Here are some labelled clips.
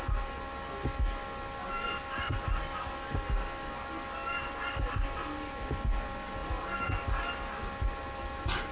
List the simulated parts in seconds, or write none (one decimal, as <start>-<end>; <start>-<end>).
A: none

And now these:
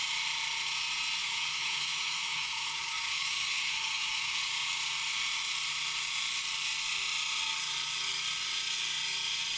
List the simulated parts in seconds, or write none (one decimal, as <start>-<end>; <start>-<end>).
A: 1.2-4.4

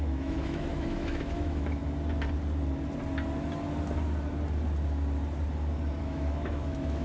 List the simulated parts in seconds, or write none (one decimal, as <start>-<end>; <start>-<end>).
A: 0.0-1.8; 6.0-7.0

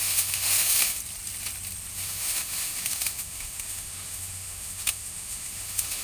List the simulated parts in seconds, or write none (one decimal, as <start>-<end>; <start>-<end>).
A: 0.0-1.0; 1.9-6.0

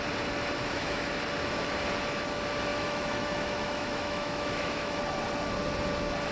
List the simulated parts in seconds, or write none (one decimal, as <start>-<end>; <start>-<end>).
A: 0.6-1.1; 2.7-5.0